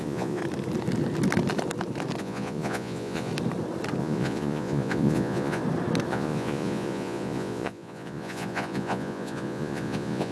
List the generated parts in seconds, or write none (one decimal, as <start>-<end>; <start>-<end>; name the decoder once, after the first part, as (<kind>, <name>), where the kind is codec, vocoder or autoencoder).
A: 0.0-0.4 (vocoder, Vocos); 2.2-3.3; 4.0-5.6; 6.1-10.3